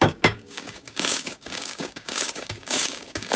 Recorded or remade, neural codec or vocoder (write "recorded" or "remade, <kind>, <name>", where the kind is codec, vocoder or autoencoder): remade, codec, DAC